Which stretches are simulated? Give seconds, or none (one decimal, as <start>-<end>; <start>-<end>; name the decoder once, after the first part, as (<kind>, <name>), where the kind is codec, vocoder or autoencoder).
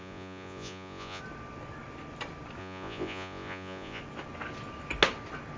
0.0-1.2 (vocoder, Vocos); 2.6-4.0